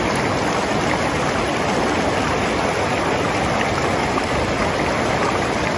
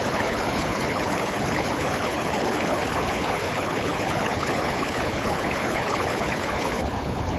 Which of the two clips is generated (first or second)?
second